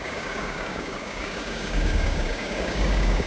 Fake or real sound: fake